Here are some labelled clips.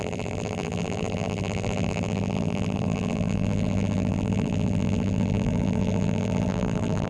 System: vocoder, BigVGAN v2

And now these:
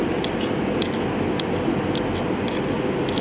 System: none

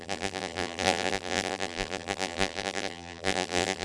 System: vocoder, BigVGAN v2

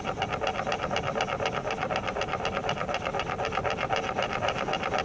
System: none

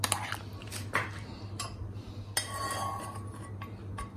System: none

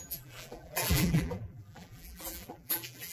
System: vocoder, BigVGAN v2